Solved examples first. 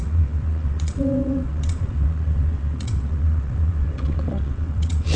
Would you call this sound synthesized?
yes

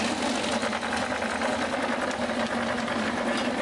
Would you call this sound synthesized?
no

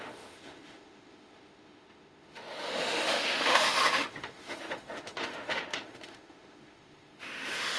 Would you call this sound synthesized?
yes